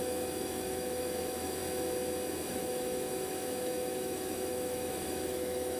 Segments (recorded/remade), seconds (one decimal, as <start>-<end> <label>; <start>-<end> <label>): 0.0-1.6 remade; 1.6-2.5 recorded; 2.5-5.8 remade